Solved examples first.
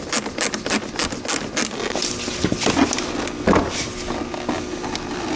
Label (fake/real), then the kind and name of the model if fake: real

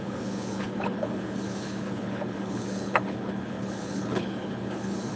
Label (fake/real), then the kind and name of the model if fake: fake, codec, HILCodec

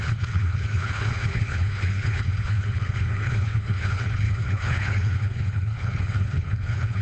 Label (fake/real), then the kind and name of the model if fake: fake, codec, HILCodec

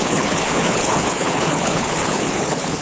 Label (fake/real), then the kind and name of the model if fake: fake, codec, HILCodec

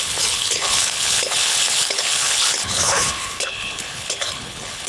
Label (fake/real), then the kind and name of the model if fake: fake, codec, HILCodec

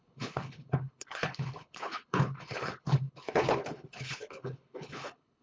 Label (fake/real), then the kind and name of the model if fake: fake, codec, HILCodec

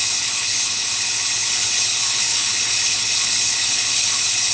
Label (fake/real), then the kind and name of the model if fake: fake, codec, HILCodec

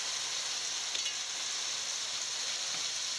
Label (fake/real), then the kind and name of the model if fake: real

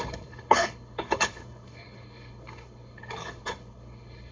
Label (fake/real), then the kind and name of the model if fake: fake, codec, HILCodec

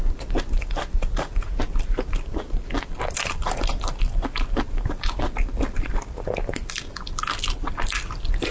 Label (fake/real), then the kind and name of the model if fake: real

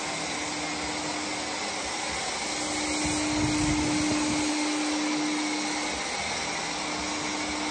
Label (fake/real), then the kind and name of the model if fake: real